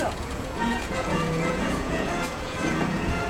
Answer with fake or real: fake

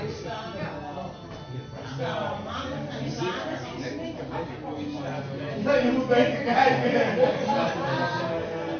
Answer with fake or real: real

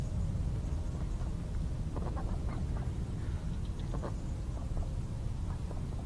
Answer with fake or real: real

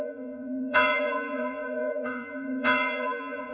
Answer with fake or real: fake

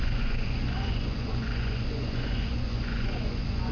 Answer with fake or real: fake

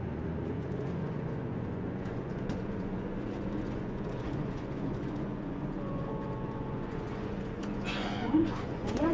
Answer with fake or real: fake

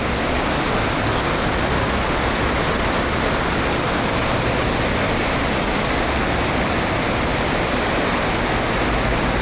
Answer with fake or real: real